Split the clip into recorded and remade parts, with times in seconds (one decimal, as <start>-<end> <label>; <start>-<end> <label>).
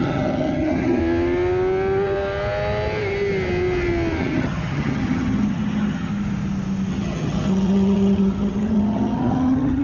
0.0-1.0 remade; 1.0-4.2 recorded; 4.2-6.1 remade; 6.1-6.9 recorded; 6.9-9.8 remade